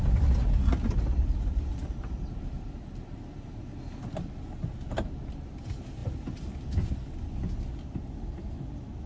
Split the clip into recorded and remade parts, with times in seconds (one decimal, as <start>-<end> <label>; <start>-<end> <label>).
0.0-9.1 recorded